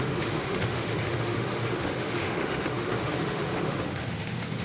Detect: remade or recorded remade